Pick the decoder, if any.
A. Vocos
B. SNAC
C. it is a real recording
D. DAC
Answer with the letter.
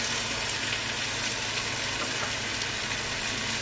C